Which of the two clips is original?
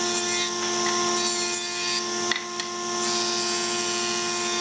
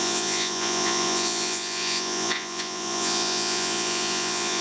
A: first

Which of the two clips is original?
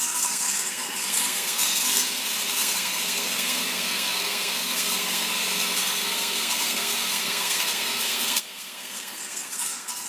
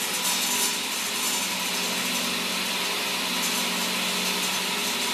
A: second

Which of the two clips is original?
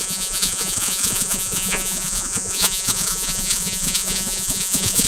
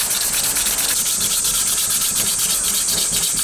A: second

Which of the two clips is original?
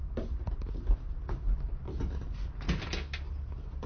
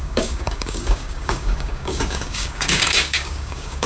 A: first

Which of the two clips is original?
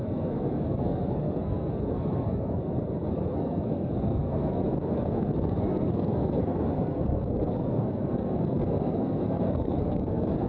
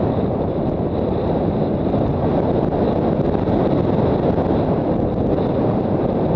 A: second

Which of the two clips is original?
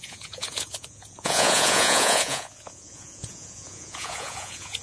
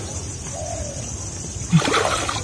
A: second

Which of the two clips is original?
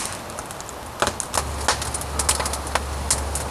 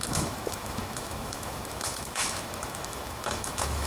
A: first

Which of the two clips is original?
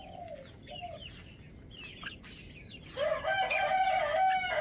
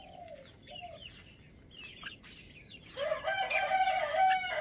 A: first